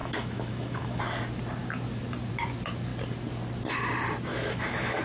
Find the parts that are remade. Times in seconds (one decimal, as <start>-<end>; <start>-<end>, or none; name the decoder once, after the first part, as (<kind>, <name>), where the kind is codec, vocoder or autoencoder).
0.0-1.0 (autoencoder, DAC-VAE); 4.3-5.0